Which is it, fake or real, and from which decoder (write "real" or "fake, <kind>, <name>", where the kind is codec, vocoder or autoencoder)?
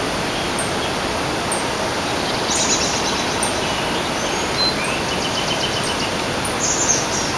real